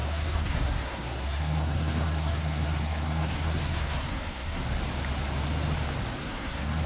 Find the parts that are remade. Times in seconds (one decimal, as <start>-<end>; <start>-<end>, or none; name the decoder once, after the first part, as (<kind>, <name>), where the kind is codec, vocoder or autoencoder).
0.0-4.6 (codec, SNAC); 6.2-6.9